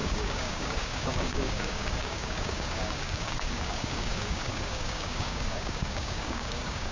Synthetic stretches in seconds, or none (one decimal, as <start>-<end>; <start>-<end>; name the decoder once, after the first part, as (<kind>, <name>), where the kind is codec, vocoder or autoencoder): 0.0-6.9 (codec, DAC)